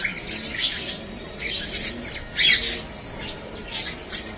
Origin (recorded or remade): recorded